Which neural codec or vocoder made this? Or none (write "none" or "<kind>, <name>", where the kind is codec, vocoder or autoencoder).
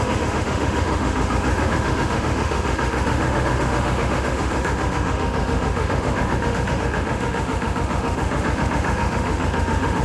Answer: autoencoder, DAC-VAE